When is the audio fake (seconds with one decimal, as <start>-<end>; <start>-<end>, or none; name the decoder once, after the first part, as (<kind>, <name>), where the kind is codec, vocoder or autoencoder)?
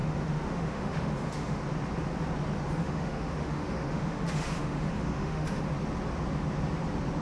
0.0-1.6 (autoencoder, DAC-VAE); 2.8-5.7